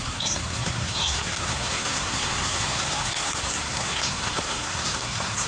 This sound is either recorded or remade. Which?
remade